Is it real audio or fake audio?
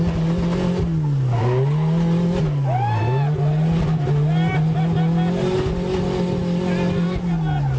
real